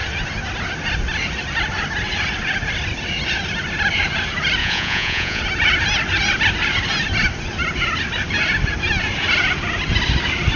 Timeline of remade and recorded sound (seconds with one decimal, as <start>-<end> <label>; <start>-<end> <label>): 0.0-4.6 recorded; 4.6-5.4 remade; 5.4-10.6 recorded